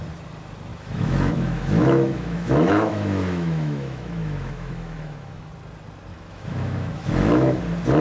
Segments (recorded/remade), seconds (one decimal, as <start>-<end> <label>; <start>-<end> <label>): 0.0-0.7 recorded; 0.7-5.5 remade; 5.5-6.1 recorded; 6.1-7.6 remade; 7.6-8.0 recorded